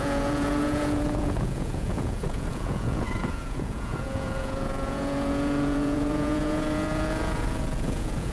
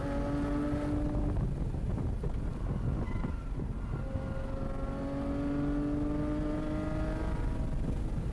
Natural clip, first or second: second